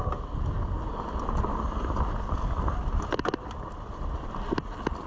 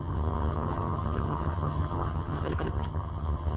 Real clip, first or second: first